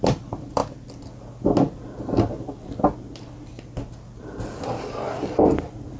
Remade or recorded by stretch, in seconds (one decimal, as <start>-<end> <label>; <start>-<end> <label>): 0.0-6.0 recorded